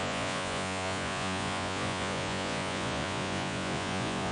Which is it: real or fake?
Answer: fake